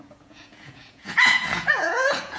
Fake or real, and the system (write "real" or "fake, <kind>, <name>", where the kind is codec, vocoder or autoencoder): fake, vocoder, Vocos